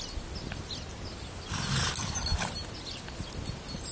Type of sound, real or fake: real